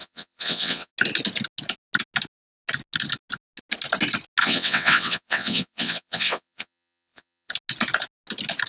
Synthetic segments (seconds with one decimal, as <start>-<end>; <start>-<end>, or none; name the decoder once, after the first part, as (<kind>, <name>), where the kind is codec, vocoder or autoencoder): 0.0-0.9 (vocoder, WaveNeXt); 4.4-7.5